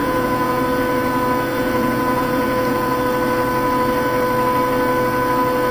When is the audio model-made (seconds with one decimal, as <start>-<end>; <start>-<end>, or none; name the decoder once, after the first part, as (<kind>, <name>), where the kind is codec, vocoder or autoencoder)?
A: 0.0-0.6 (vocoder, Vocos); 1.5-3.0